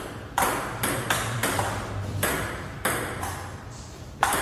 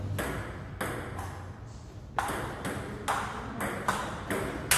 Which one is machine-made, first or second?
first